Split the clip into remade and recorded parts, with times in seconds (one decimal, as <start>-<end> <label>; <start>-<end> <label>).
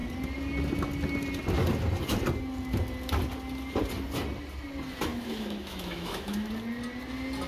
0.0-5.1 recorded; 5.1-6.5 remade; 6.5-7.5 recorded